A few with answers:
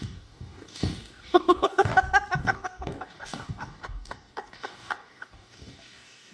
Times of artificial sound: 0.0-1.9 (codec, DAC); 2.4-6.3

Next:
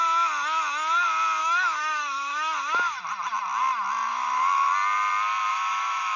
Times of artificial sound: 1.4-3.0 (autoencoder, DAC-VAE); 4.1-4.7; 5.5-6.2